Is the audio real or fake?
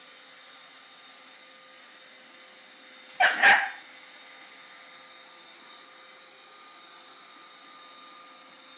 real